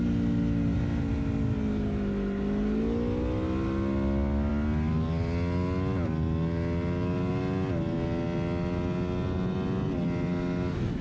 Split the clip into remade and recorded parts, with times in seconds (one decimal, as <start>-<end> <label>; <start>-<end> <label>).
0.0-11.0 recorded